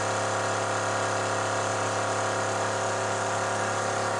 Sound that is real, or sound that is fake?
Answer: real